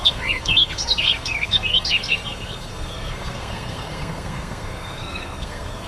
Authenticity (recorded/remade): remade